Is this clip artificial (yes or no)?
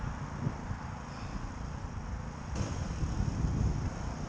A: no